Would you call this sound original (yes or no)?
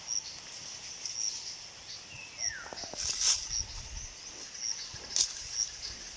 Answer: yes